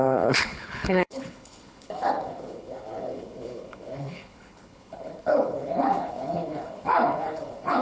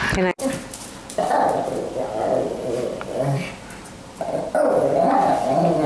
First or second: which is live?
second